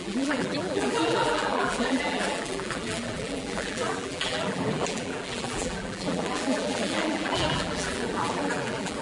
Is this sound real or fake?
fake